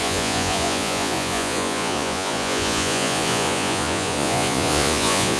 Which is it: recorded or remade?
remade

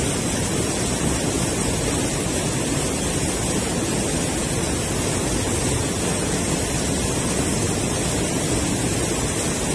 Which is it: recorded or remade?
recorded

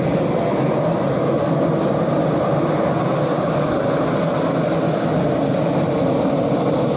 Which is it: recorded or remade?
recorded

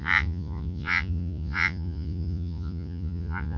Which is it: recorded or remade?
remade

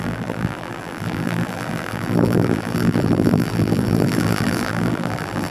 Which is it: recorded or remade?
remade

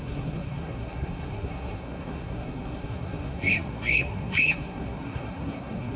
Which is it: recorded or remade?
remade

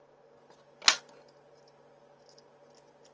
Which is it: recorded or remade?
recorded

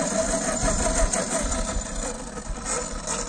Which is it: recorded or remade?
recorded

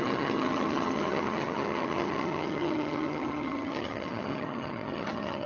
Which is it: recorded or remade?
remade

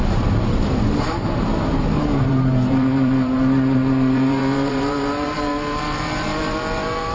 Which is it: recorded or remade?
remade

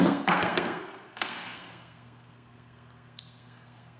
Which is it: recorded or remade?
remade